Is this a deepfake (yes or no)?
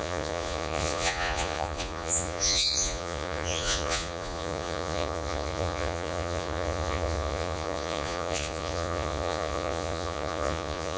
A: yes